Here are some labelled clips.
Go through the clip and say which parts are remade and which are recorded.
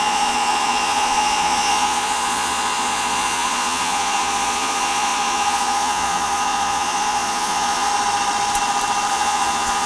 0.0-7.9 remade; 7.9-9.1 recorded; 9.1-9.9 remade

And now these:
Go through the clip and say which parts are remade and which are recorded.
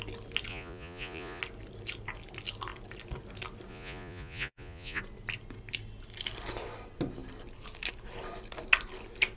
0.0-0.5 recorded; 0.5-1.4 remade; 1.4-3.7 recorded; 3.7-5.0 remade; 5.0-9.4 recorded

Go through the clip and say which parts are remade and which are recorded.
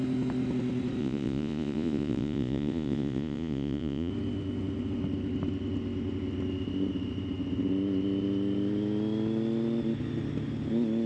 0.0-1.0 recorded; 1.0-4.1 remade; 4.1-11.1 recorded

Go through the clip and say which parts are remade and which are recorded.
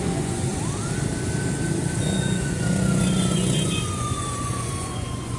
0.0-0.5 remade; 0.5-2.0 recorded; 2.0-5.4 remade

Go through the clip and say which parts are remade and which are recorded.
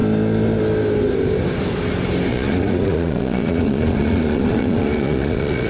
0.0-2.3 recorded; 2.3-5.7 remade